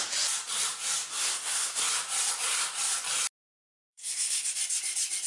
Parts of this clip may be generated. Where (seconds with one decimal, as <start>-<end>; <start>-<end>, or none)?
1.1-1.8; 3.7-4.5